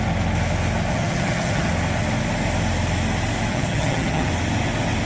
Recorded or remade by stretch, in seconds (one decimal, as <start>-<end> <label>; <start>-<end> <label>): 0.0-0.9 recorded; 0.9-1.7 remade; 1.7-3.5 recorded; 3.5-4.3 remade; 4.3-5.1 recorded

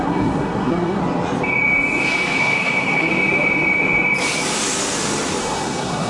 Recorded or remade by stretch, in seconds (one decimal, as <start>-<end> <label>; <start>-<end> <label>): 0.0-1.0 remade; 1.0-2.4 recorded; 2.4-3.1 remade; 3.1-5.4 recorded; 5.4-6.1 remade

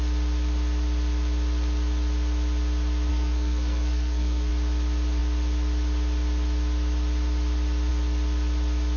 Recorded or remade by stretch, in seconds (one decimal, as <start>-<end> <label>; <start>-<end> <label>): 0.0-3.1 recorded; 3.1-4.5 remade; 4.5-9.0 recorded

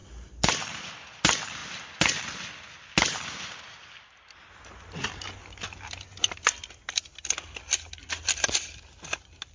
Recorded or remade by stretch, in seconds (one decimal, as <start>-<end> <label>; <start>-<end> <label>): 0.0-9.5 recorded

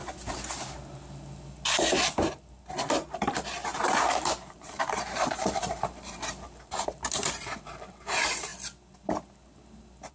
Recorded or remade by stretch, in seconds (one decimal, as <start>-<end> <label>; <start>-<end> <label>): 0.0-2.8 recorded; 2.8-8.5 remade; 8.5-10.1 recorded

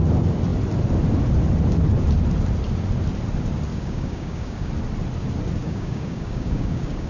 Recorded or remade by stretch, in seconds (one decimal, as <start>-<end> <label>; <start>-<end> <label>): 0.0-3.7 recorded; 3.7-4.7 remade; 4.7-5.6 recorded; 5.6-7.1 remade

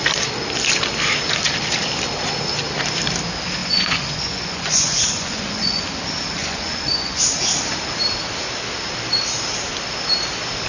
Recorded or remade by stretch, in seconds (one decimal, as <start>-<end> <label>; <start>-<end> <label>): 0.0-3.6 recorded; 3.6-5.8 remade; 5.8-6.4 recorded; 6.4-7.2 remade; 7.2-10.7 recorded